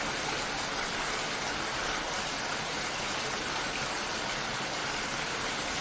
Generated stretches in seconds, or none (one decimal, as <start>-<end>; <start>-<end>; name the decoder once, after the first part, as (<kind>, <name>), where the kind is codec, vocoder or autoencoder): 4.8-5.8 (vocoder, BigVGAN v2)